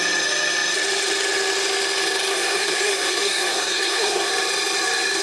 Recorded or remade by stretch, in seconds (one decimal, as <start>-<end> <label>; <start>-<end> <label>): 0.0-2.3 recorded; 2.3-4.3 remade; 4.3-5.2 recorded